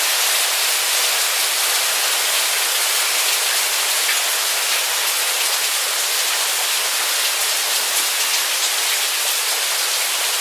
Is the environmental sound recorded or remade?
recorded